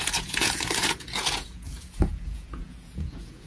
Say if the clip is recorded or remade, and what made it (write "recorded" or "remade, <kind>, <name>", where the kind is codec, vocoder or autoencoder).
remade, vocoder, Vocos